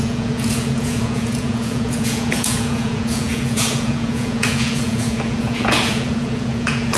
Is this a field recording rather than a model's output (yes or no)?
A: no